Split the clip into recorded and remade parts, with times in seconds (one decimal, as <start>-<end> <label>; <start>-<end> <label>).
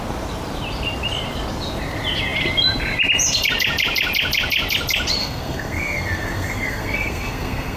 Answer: 0.0-5.2 recorded; 5.2-7.8 remade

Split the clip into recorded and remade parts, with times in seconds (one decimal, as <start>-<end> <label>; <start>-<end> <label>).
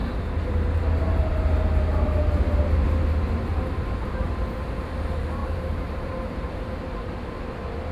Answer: 0.0-5.4 recorded; 5.4-6.5 remade; 6.5-7.9 recorded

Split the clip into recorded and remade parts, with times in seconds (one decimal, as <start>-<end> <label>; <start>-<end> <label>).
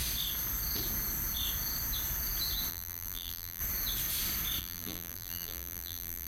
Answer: 0.0-2.7 recorded; 2.7-3.6 remade; 3.6-4.6 recorded; 4.6-6.3 remade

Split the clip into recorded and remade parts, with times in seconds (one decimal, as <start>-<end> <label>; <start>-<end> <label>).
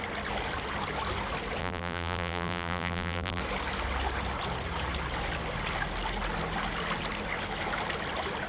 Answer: 0.0-1.6 recorded; 1.6-3.4 remade; 3.4-8.5 recorded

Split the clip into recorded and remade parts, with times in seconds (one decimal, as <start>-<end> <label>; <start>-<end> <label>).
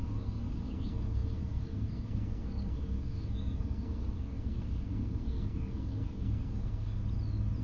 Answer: 0.0-7.0 remade; 7.0-7.6 recorded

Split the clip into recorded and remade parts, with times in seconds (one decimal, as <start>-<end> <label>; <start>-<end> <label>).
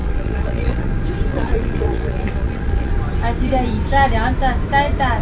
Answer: 0.0-0.9 remade; 0.9-1.3 recorded; 1.3-2.9 remade; 2.9-5.2 recorded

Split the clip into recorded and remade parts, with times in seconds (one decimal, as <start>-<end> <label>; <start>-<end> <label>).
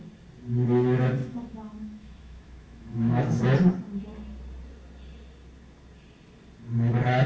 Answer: 0.0-1.2 recorded; 1.2-3.4 remade; 3.4-7.3 recorded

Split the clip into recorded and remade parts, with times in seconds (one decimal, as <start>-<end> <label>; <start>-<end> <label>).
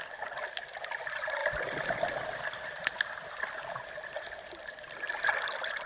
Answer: 0.0-5.9 recorded